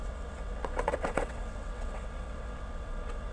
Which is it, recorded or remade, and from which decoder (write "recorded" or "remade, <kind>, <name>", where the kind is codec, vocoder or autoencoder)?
remade, vocoder, WaveNeXt